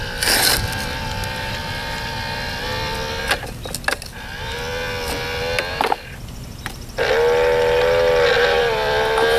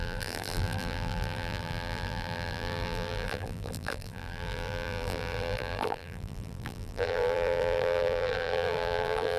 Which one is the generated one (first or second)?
second